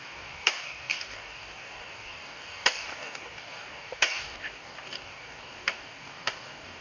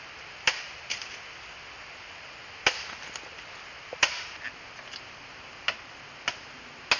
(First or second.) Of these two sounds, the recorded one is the second